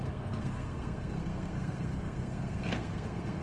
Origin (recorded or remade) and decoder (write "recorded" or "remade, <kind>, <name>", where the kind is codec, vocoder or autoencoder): remade, codec, SNAC